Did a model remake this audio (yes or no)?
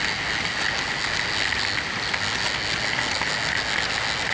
no